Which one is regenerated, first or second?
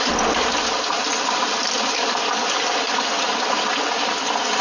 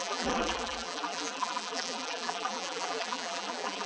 second